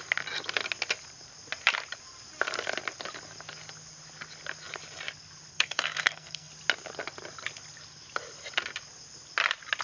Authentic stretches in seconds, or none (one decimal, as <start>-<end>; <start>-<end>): 0.0-5.5; 6.5-9.8